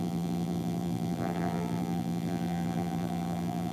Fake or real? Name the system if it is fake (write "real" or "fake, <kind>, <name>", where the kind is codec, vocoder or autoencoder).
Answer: fake, vocoder, BigVGAN v2